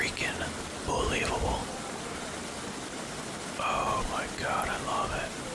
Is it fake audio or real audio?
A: real